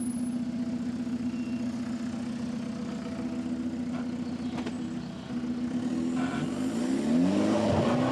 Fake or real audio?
real